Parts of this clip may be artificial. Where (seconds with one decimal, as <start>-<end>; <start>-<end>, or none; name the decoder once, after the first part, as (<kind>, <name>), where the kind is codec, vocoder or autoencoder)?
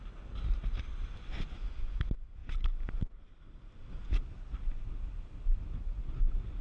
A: none